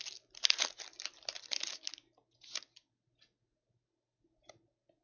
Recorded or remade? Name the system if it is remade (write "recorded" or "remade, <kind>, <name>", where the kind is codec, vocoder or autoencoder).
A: recorded